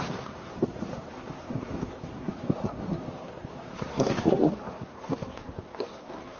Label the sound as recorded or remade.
remade